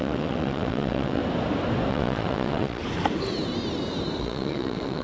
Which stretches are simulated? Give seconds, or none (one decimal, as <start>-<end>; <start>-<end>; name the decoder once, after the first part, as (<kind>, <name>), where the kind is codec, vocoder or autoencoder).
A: 0.0-1.2 (vocoder, WaveNeXt); 1.9-2.8; 4.2-5.0